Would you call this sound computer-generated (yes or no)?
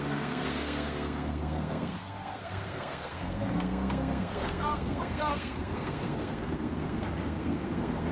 yes